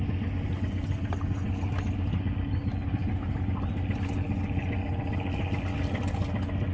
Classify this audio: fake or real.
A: real